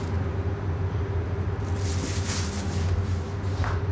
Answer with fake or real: real